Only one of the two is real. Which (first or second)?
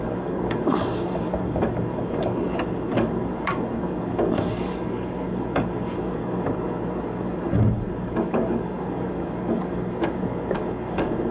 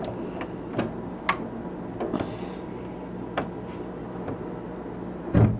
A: second